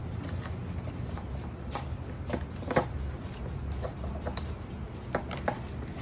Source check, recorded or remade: recorded